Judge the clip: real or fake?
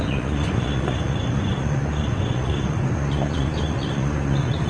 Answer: fake